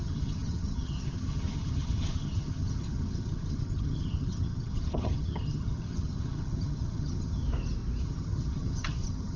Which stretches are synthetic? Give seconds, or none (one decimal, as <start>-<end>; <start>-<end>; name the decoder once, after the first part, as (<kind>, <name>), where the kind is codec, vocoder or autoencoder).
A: 0.0-7.4 (vocoder, HiFi-GAN); 8.0-9.4